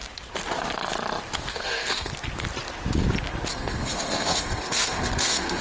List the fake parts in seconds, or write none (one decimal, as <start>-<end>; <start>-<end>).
1.5-2.1; 3.5-5.6